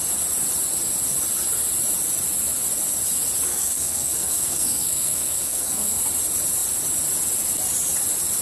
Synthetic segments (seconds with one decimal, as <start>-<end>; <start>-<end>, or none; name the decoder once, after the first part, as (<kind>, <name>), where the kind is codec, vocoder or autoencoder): 3.5-6.0 (codec, SNAC)